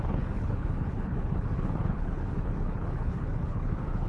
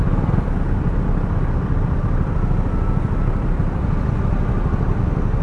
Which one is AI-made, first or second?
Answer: first